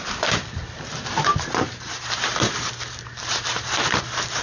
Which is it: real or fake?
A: fake